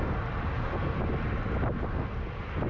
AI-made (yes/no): no